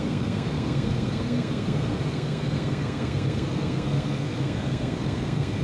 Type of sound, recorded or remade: remade